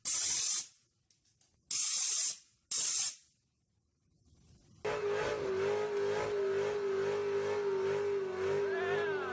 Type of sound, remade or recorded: recorded